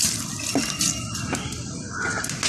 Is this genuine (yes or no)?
yes